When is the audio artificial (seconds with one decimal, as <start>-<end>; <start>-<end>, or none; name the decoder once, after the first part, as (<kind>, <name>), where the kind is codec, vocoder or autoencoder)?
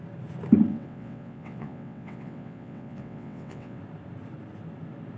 0.7-3.8 (vocoder, WaveNeXt)